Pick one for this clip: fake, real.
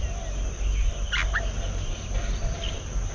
real